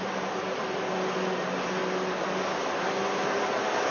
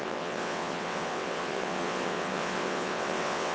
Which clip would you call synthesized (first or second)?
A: second